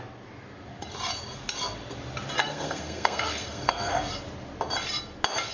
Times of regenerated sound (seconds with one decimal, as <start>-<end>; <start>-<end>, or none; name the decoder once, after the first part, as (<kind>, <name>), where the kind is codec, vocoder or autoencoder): 2.4-3.9 (codec, SNAC)